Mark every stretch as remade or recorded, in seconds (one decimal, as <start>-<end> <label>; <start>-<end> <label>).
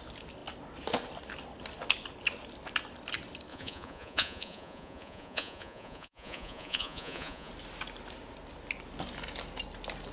0.0-3.5 recorded; 3.5-7.5 remade; 7.5-10.1 recorded